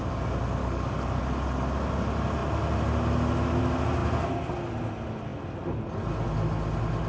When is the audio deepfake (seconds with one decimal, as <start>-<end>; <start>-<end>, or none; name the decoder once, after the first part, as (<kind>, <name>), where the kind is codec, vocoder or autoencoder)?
0.6-1.2 (codec, DAC)